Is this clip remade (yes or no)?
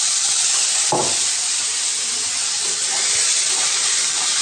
no